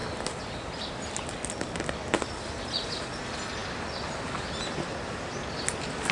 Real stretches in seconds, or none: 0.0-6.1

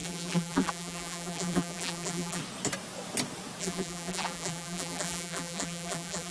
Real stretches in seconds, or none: 2.4-3.6

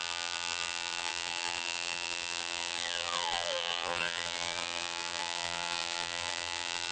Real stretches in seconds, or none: none